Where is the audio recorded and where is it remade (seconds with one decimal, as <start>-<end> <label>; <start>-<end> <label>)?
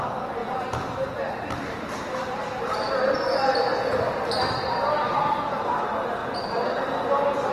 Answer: 0.0-0.4 recorded; 0.4-4.9 remade; 4.9-6.2 recorded; 6.2-6.8 remade; 6.8-7.5 recorded